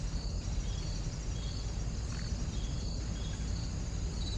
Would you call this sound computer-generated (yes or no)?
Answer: no